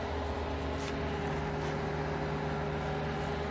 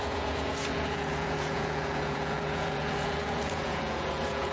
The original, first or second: first